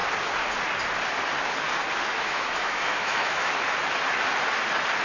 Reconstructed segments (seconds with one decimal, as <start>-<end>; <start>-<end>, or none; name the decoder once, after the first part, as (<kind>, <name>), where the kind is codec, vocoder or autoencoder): 2.1-3.5 (autoencoder, DAC-VAE)